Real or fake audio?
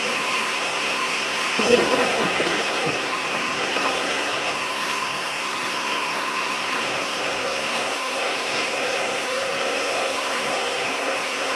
fake